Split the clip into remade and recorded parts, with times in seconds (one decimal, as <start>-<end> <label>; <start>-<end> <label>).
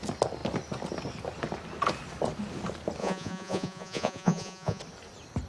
0.0-3.0 recorded; 3.0-4.8 remade; 4.8-5.5 recorded